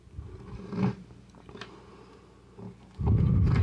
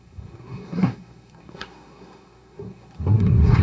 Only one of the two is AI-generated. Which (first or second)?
second